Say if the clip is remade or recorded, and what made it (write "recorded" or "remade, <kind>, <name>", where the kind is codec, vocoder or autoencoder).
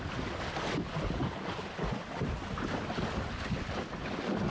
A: recorded